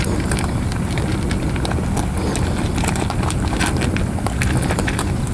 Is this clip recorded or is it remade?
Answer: recorded